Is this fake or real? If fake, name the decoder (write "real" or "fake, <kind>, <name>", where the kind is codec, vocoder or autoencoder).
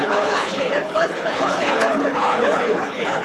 fake, codec, HILCodec